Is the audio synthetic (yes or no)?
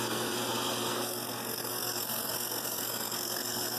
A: yes